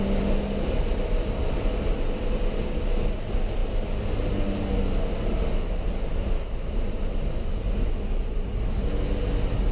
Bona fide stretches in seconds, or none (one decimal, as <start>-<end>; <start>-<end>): 0.0-9.7

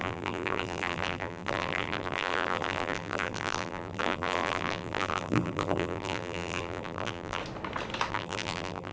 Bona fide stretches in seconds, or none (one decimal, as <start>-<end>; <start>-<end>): 7.4-8.1

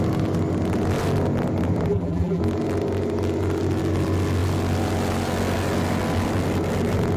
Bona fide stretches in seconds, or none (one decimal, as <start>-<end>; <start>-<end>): 0.0-1.9; 2.4-7.2

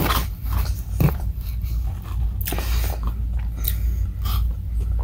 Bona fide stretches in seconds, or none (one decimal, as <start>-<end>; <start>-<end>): 1.6-4.6